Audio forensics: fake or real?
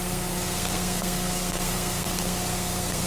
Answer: fake